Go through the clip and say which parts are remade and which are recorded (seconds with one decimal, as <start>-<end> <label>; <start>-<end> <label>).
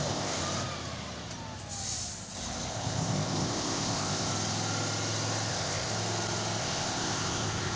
0.0-0.4 remade; 0.4-2.7 recorded; 2.7-4.3 remade; 4.3-5.5 recorded; 5.5-5.9 remade; 5.9-6.6 recorded; 6.6-7.8 remade